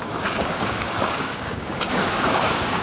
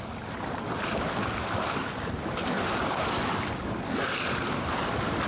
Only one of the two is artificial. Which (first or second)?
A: first